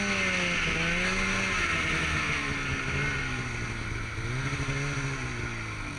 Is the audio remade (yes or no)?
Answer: no